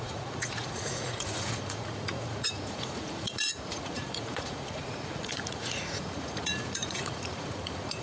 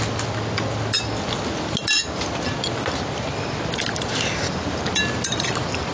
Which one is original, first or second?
second